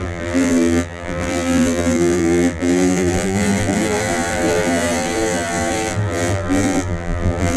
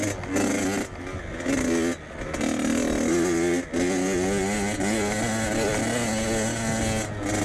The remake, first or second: first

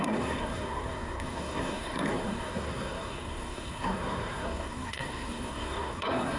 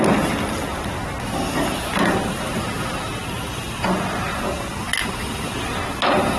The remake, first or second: first